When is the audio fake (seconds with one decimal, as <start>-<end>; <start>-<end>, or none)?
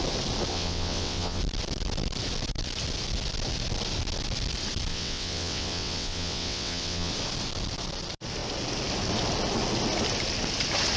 0.5-1.4; 4.9-7.1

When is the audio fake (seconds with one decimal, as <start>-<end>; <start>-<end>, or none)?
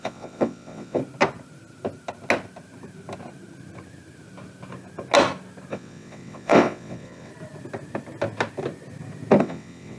0.0-1.0; 5.7-7.3; 9.4-10.0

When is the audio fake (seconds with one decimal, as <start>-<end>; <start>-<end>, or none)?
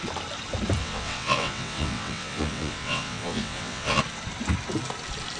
0.8-4.0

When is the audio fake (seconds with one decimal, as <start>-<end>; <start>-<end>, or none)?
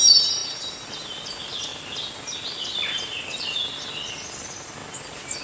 none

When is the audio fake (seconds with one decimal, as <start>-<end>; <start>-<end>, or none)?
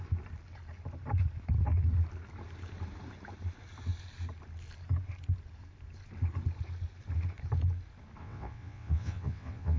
8.2-9.8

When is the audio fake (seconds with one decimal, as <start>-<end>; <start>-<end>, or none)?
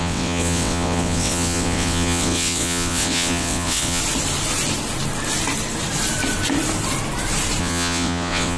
0.0-4.0; 7.6-8.6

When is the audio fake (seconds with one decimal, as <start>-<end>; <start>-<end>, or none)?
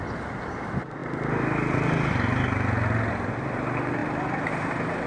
none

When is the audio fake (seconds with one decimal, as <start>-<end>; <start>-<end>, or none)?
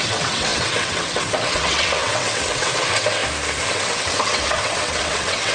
0.0-3.2; 3.7-5.5